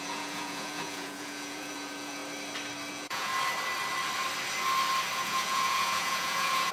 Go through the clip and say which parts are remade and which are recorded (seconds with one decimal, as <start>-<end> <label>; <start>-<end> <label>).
0.0-2.2 remade; 2.2-2.9 recorded; 2.9-3.3 remade; 3.3-5.1 recorded; 5.1-6.7 remade